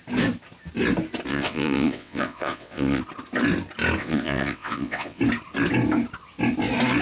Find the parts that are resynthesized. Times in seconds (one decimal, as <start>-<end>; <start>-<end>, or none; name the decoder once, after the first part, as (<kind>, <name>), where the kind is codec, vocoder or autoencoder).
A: 1.3-3.0 (vocoder, WaveNeXt); 4.0-5.2